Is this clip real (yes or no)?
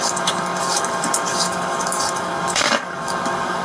no